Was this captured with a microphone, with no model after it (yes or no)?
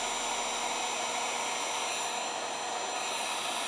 yes